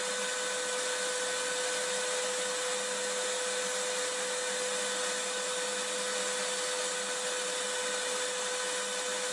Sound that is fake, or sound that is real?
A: real